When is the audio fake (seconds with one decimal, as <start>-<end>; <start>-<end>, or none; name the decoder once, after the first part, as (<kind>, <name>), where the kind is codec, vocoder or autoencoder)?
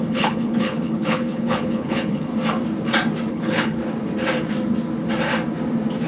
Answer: 0.0-2.3 (codec, HILCodec); 3.3-3.8